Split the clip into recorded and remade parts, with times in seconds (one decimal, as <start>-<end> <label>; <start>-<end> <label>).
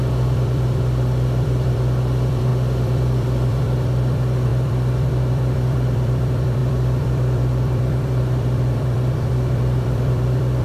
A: 0.0-10.6 remade